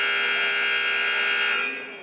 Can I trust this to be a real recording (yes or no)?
yes